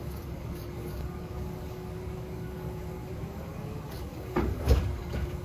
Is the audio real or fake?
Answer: fake